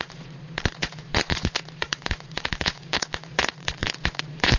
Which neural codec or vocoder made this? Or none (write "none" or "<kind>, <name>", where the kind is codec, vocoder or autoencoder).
vocoder, Vocos